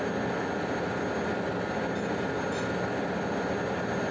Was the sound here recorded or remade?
recorded